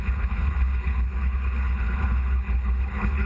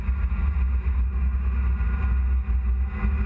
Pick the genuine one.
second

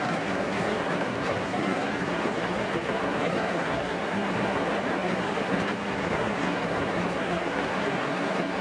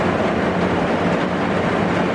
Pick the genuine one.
second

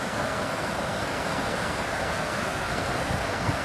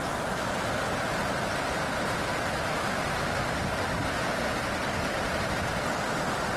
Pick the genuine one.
second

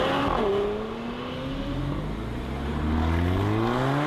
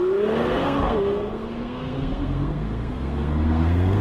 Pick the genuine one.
first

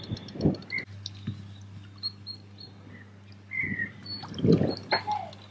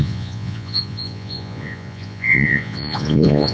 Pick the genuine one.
first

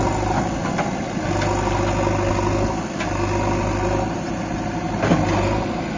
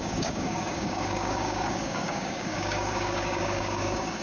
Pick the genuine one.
first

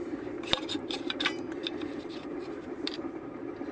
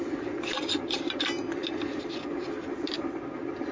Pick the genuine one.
second